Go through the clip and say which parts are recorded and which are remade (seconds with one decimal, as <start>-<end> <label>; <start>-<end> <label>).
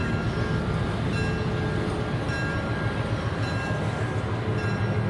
0.0-5.1 recorded